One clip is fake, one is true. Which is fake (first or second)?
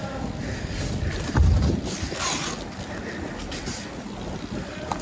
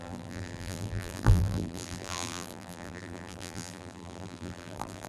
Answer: second